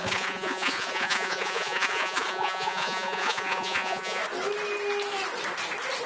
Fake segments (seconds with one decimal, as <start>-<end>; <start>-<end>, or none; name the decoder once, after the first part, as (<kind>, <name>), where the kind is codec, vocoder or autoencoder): 0.0-4.2 (vocoder, Vocos)